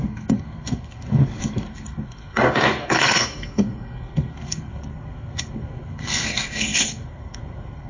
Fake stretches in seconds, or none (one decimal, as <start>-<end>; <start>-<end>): 0.0-7.9